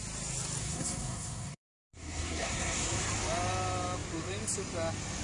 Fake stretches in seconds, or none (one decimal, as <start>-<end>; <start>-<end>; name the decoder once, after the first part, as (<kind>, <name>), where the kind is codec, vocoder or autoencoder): 0.6-3.0 (codec, SNAC)

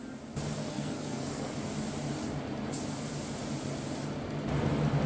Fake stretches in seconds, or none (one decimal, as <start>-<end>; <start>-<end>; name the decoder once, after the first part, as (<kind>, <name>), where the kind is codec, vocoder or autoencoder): 0.6-1.5 (codec, SNAC)

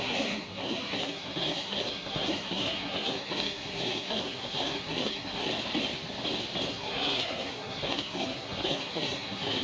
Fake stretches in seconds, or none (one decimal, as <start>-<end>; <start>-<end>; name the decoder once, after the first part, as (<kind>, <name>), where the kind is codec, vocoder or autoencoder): 0.0-5.5 (codec, SNAC); 6.7-9.6

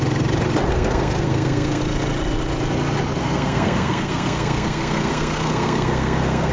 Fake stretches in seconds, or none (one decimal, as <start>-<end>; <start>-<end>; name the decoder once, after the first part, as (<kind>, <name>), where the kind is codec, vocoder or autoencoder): 0.7-1.8 (codec, SNAC); 3.2-6.5

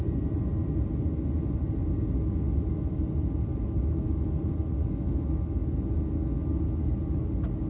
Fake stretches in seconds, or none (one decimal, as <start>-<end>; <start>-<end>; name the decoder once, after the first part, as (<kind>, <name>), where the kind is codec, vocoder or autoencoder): none

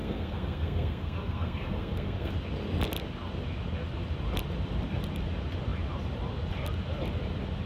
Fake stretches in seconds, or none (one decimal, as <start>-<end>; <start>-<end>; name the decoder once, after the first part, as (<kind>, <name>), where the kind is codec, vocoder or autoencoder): 0.0-2.3 (codec, SNAC)